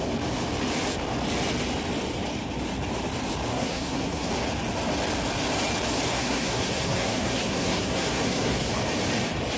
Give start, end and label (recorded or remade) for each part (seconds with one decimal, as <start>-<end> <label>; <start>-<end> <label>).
0.0-3.5 recorded; 3.5-4.3 remade; 4.3-6.1 recorded; 6.1-8.7 remade; 8.7-9.6 recorded